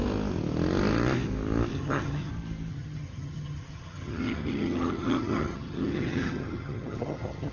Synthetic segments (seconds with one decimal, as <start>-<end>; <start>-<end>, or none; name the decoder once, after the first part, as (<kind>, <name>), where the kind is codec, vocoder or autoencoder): 1.7-2.3 (vocoder, HiFi-GAN); 2.7-7.5